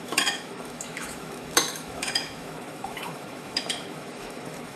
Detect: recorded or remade remade